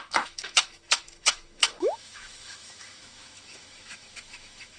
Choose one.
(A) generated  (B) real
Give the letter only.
A